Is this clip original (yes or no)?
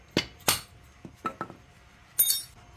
yes